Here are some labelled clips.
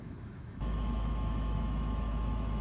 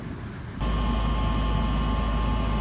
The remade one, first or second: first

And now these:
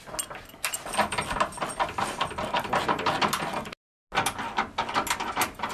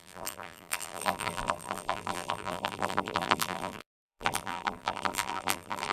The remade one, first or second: second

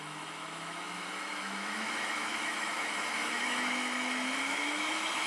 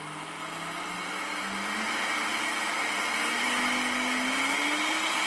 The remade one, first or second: first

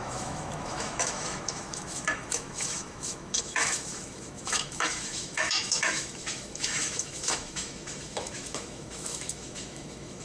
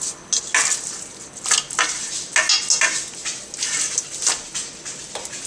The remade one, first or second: first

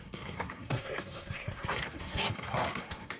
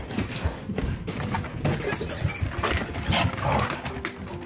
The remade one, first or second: first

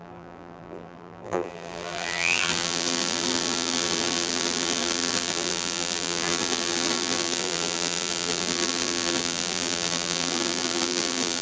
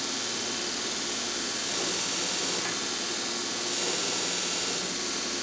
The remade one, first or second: first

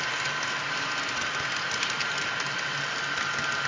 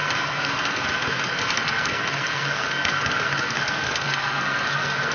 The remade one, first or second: second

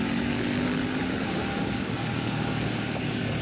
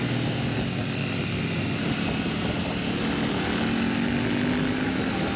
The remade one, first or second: first